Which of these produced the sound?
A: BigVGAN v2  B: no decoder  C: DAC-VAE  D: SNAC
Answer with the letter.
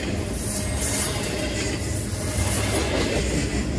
B